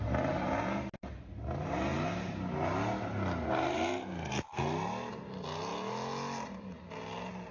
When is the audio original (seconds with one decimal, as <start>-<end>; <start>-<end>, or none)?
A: 0.0-7.5